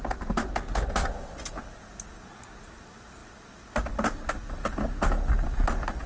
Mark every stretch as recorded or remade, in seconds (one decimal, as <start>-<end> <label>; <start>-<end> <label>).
0.0-6.1 recorded